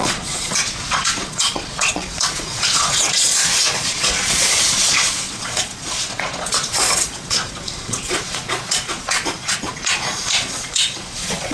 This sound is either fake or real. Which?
fake